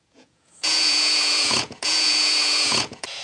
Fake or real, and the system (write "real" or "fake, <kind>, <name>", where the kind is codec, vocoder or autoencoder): fake, vocoder, Vocos